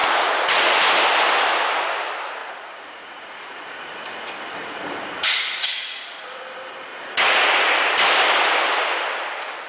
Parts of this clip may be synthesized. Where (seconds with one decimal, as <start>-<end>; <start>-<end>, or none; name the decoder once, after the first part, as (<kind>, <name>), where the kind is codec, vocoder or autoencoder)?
0.0-0.8 (vocoder, Vocos); 2.4-3.8; 4.6-6.3; 6.9-7.6